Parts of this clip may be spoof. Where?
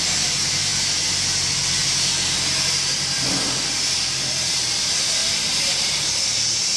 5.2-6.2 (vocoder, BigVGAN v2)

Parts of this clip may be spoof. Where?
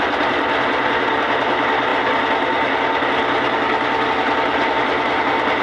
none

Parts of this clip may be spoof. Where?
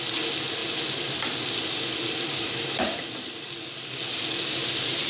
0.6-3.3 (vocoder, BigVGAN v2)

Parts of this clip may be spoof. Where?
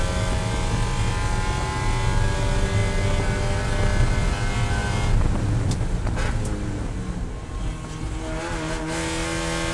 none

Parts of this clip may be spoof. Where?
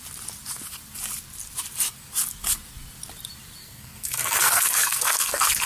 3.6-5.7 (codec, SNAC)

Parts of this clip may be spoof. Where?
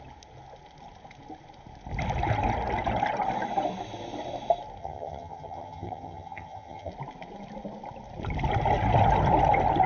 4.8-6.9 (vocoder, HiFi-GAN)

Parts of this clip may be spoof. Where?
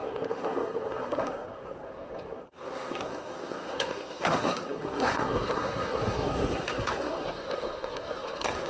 0.0-8.7 (codec, SNAC)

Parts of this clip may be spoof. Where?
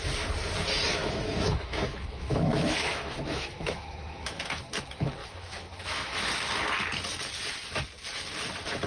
1.0-4.6 (autoencoder, DAC-VAE); 5.2-6.3